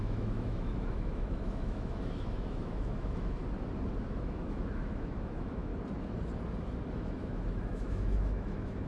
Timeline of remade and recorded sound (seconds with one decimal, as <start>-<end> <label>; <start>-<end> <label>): 0.0-3.4 remade; 3.4-4.1 recorded; 4.1-5.7 remade; 5.7-6.9 recorded; 6.9-8.9 remade